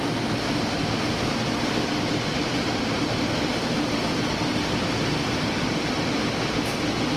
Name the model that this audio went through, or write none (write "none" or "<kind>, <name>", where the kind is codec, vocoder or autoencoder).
none